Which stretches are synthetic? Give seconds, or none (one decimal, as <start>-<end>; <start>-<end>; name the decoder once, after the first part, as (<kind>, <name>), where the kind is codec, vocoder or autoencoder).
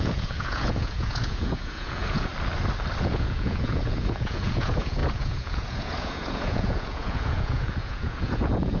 0.0-2.3 (vocoder, Vocos); 3.0-8.8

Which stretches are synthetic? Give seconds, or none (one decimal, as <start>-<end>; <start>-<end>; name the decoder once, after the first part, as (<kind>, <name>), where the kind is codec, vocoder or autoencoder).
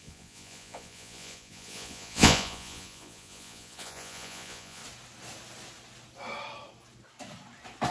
0.0-4.8 (vocoder, Vocos)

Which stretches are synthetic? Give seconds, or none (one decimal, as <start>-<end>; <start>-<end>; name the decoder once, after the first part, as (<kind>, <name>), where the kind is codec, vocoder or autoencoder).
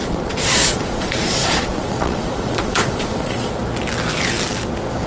0.0-3.6 (vocoder, Vocos)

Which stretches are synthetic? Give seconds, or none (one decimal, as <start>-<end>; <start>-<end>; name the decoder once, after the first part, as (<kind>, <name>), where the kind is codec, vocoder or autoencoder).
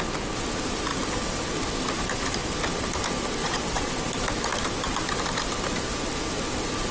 3.4-3.9 (vocoder, Vocos)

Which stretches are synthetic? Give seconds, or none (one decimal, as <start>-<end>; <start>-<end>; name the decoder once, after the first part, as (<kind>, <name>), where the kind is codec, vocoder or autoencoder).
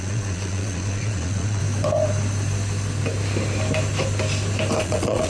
0.0-1.6 (vocoder, Vocos); 4.8-5.3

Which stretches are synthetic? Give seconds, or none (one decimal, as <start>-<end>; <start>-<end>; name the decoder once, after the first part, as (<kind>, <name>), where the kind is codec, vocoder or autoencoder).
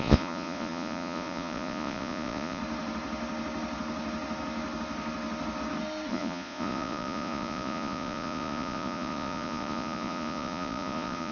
0.0-2.6 (vocoder, Vocos); 6.1-11.3